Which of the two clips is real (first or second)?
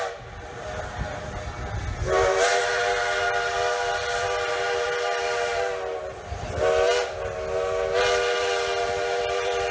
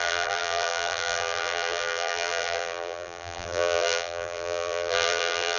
first